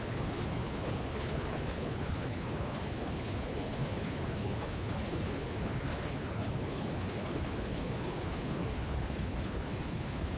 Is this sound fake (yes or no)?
yes